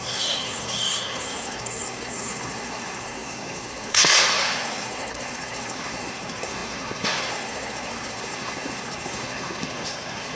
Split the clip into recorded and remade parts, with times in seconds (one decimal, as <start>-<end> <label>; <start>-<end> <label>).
0.0-10.4 remade